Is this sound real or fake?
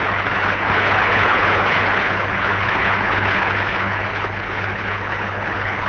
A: fake